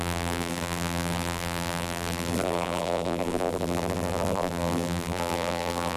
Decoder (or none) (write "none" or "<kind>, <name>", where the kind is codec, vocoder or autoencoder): vocoder, BigVGAN v2